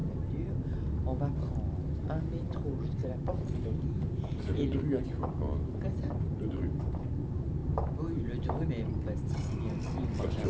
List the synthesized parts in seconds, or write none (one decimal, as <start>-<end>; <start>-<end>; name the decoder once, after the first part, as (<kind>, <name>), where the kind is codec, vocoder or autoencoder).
3.0-7.1 (vocoder, BigVGAN v2)